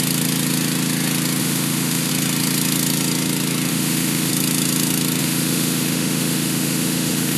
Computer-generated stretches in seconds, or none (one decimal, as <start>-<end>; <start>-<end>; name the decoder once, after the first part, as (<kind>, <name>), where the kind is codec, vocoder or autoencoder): 1.4-2.1 (autoencoder, DAC-VAE); 3.7-4.3; 5.2-7.4